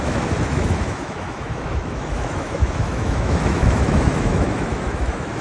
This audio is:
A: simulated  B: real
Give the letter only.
A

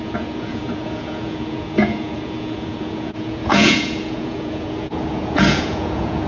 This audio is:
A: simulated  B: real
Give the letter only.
A